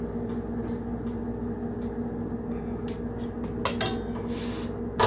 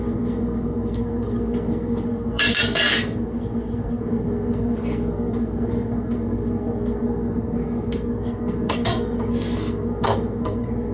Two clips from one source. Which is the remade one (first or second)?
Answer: second